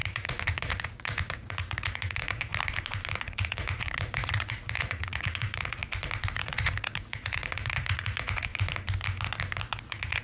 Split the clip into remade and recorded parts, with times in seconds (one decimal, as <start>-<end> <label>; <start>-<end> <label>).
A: 0.0-2.5 remade; 2.5-3.1 recorded; 3.1-5.8 remade; 5.8-6.3 recorded; 6.3-8.5 remade; 8.5-9.7 recorded; 9.7-10.2 remade